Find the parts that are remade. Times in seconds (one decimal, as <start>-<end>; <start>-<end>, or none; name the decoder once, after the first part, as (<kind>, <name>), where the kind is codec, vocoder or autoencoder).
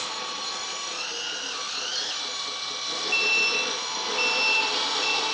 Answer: none